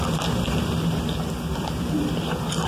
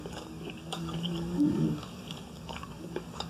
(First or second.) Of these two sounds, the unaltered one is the first